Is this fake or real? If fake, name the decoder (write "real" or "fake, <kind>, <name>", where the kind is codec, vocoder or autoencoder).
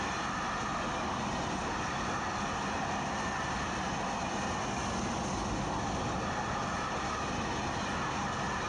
real